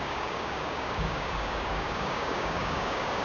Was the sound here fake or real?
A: fake